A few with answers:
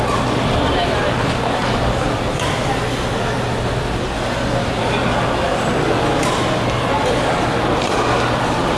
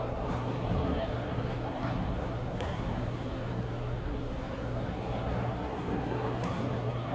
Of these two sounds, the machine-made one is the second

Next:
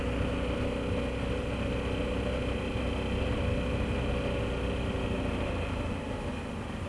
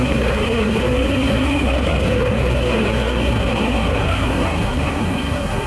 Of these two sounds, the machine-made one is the second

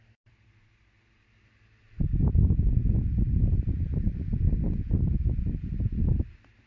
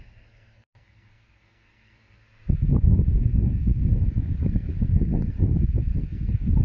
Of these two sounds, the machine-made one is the second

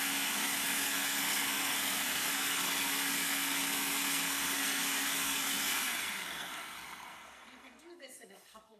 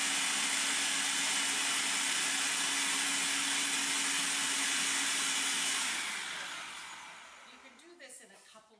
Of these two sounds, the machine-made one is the first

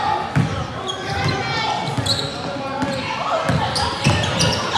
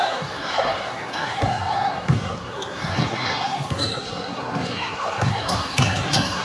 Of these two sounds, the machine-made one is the second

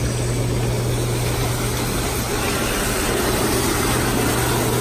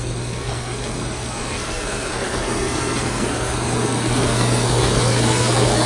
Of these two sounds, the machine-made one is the second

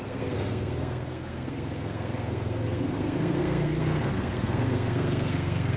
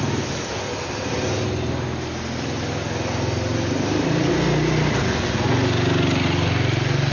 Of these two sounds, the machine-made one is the first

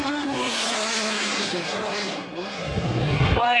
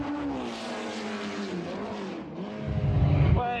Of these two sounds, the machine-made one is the first